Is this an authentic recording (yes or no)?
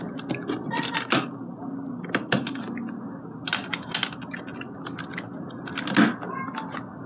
yes